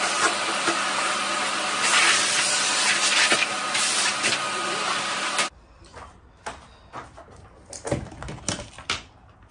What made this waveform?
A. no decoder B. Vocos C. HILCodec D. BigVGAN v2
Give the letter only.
A